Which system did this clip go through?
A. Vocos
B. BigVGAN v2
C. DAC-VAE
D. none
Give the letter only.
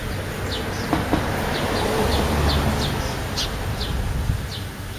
D